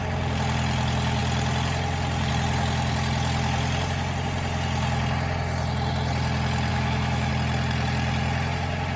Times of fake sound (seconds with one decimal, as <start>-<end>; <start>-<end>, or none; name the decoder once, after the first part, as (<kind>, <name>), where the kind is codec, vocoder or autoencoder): 6.7-7.3 (autoencoder, DAC-VAE)